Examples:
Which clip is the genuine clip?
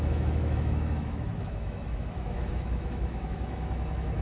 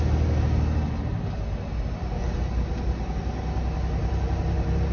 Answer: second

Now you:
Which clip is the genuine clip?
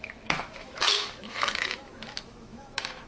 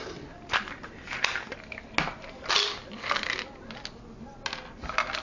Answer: second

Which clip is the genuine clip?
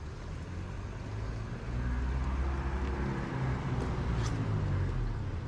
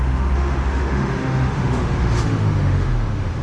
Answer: first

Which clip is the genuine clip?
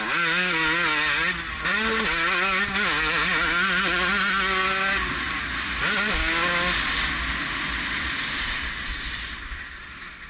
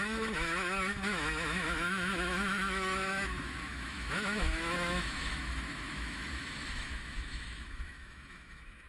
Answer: first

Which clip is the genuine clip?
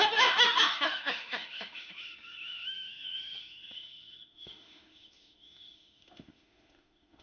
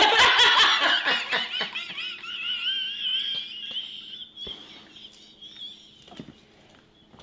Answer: second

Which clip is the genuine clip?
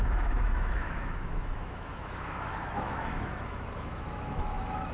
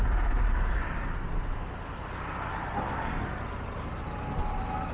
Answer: second